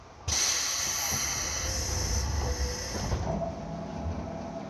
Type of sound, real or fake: real